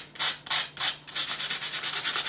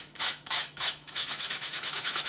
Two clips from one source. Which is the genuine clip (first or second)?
first